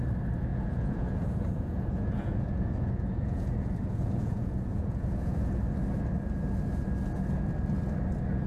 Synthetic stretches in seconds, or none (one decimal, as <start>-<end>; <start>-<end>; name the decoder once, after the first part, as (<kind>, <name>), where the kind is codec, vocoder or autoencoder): 0.5-5.5 (vocoder, Vocos)

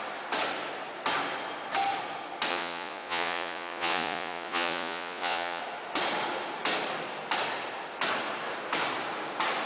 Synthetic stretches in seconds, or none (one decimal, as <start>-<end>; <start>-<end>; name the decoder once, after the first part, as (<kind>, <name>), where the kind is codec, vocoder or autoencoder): 2.5-5.6 (vocoder, Vocos)